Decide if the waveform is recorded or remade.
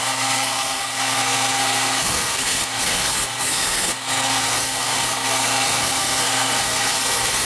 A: remade